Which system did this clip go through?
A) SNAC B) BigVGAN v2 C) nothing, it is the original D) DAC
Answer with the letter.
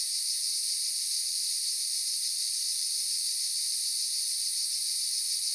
B